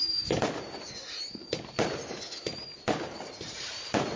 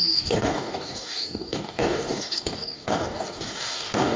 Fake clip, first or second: second